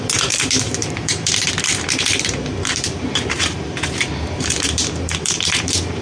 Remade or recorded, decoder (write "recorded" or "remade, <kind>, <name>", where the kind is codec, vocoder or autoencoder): remade, vocoder, BigVGAN v2